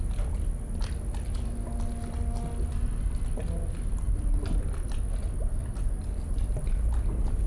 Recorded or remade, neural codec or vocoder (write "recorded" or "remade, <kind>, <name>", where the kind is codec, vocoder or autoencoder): recorded